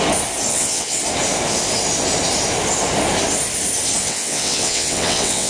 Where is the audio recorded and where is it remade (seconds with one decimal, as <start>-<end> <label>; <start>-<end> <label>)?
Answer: 0.0-0.5 recorded; 0.5-1.0 remade; 1.0-4.0 recorded; 4.0-5.5 remade